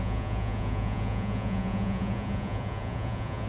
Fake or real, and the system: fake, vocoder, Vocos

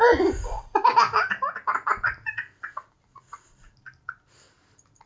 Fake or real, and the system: real